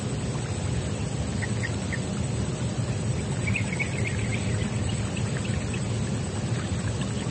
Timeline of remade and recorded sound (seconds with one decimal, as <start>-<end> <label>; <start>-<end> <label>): 0.0-7.3 recorded